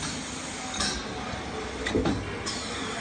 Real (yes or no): yes